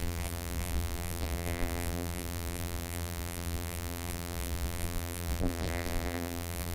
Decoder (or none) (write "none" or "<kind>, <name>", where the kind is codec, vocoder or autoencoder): vocoder, BigVGAN v2